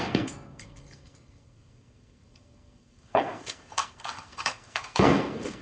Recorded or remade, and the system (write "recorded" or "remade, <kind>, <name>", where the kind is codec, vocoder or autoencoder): remade, codec, SNAC